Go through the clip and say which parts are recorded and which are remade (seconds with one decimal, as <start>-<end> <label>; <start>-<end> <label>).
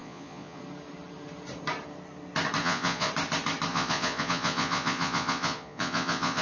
0.0-0.6 remade; 0.6-2.6 recorded; 2.6-3.1 remade; 3.1-3.7 recorded; 3.7-6.4 remade